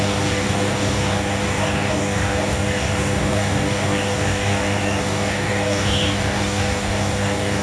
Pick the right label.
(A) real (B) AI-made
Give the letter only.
B